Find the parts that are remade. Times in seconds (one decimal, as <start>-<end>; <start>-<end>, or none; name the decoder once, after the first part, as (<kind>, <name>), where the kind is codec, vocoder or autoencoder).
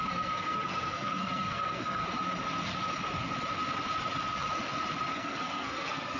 0.0-2.0 (codec, SNAC); 5.1-6.2